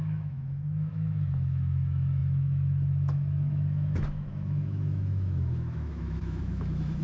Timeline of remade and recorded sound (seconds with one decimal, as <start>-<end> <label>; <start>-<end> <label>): 0.0-7.0 remade